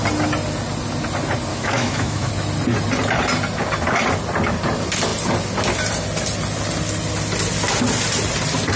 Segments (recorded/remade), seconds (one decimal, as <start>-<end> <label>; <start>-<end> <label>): 0.0-1.5 recorded; 1.5-2.3 remade; 2.3-8.8 recorded